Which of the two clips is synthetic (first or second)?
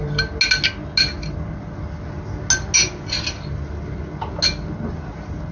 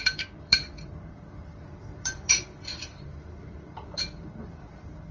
second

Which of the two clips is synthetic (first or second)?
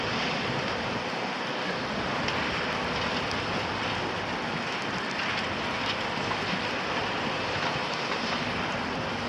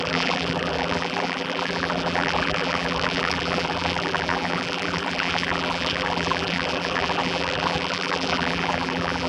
second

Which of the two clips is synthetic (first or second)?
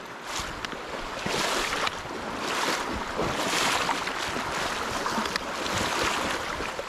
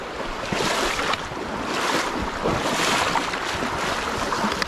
second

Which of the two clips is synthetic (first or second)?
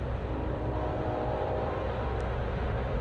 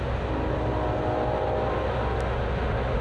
first